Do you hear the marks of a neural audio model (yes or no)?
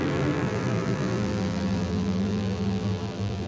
yes